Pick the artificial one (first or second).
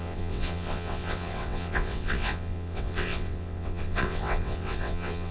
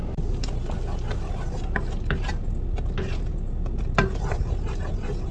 first